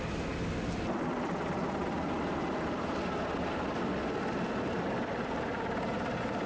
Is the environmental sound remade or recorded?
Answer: recorded